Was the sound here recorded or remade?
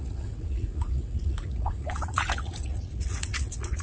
remade